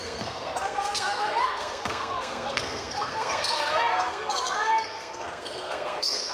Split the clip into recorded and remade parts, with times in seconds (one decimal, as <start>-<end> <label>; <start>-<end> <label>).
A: 0.0-6.3 remade